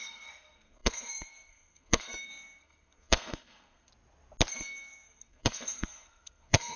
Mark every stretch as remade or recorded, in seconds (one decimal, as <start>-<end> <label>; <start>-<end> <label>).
0.0-3.9 remade; 3.9-4.5 recorded; 4.5-6.8 remade